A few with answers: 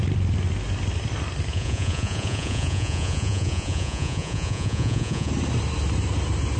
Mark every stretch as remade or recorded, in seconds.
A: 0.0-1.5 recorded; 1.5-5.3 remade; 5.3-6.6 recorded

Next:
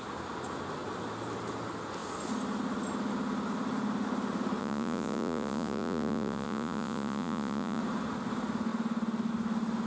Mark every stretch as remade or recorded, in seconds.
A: 0.0-4.6 recorded; 4.6-7.8 remade; 7.8-9.9 recorded

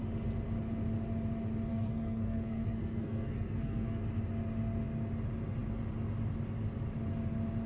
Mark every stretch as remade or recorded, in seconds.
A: 0.0-1.7 recorded; 1.7-4.0 remade; 4.0-7.7 recorded

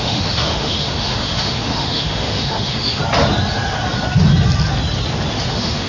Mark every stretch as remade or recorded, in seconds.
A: 0.0-3.0 remade; 3.0-5.5 recorded; 5.5-5.9 remade

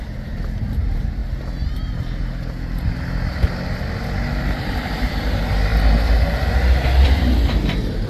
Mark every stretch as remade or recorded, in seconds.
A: 0.0-1.2 remade; 1.2-4.4 recorded; 4.4-5.7 remade; 5.7-8.1 recorded